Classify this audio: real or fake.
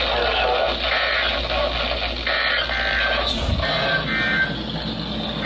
real